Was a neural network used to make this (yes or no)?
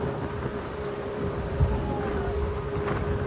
yes